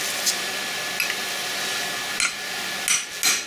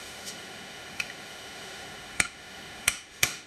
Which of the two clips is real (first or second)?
first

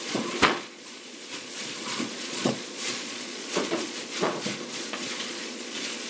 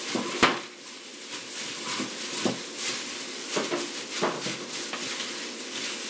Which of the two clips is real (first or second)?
second